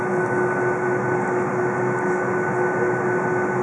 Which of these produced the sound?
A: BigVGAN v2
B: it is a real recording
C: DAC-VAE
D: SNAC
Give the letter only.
B